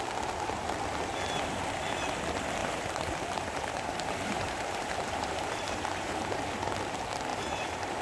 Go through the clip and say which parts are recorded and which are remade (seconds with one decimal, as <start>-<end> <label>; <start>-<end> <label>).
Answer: 0.0-2.6 recorded; 2.6-6.5 remade; 6.5-7.3 recorded; 7.3-8.0 remade